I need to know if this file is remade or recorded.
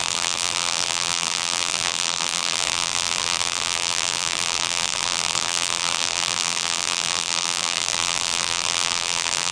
remade